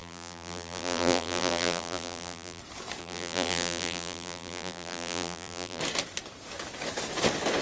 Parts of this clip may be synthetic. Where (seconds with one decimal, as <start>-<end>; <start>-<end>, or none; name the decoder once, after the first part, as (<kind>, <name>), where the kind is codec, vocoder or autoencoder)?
0.0-2.6 (vocoder, BigVGAN v2); 3.0-5.8